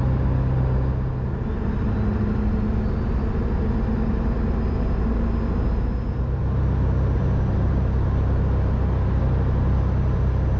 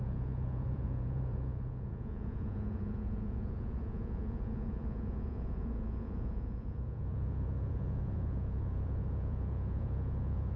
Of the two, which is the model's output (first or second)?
second